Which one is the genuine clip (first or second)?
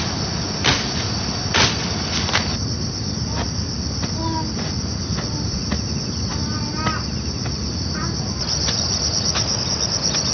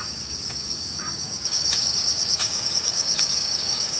first